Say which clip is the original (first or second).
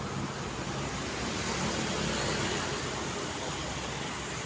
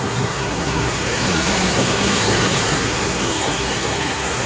first